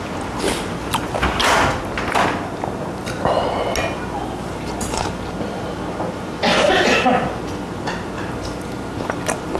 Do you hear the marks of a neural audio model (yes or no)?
no